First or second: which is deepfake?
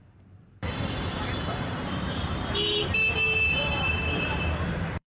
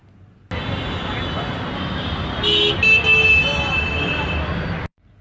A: first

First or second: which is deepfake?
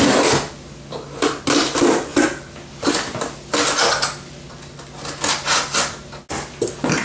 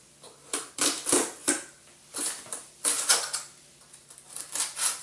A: second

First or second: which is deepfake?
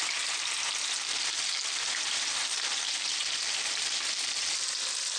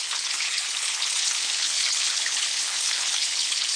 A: second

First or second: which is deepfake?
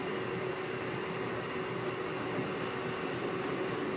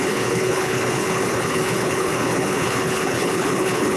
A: second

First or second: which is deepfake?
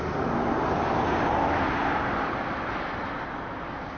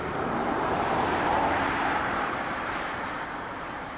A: second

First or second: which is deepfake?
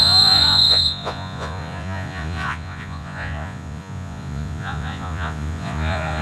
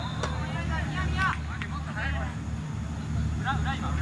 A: first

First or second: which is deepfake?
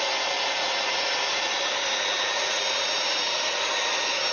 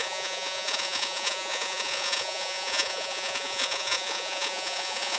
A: second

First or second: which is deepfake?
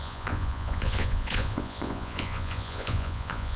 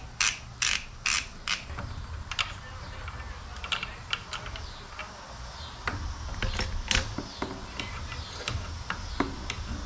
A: first